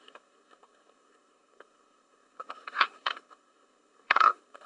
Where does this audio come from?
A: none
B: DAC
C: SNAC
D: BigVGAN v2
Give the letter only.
C